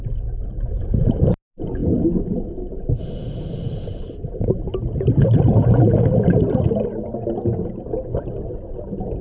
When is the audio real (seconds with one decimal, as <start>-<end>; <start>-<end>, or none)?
0.0-9.2